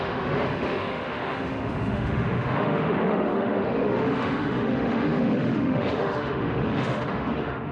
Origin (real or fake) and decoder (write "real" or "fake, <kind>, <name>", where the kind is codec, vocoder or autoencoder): fake, autoencoder, DAC-VAE